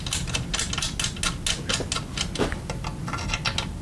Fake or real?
real